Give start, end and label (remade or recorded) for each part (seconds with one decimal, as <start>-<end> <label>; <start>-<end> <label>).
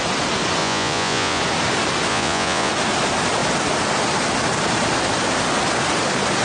0.0-0.6 recorded; 0.6-1.4 remade; 1.4-2.1 recorded; 2.1-2.7 remade; 2.7-6.4 recorded